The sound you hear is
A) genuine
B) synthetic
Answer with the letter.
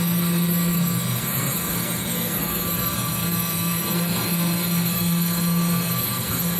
B